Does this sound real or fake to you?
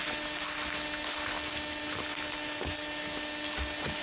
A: real